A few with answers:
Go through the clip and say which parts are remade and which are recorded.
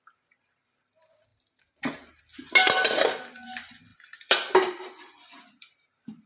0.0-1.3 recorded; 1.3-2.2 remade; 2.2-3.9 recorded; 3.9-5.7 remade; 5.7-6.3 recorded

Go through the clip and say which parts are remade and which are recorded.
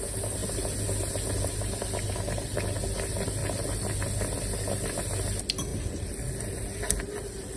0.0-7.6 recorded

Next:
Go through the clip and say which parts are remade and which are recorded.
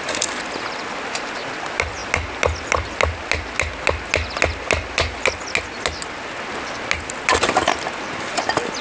0.0-8.8 recorded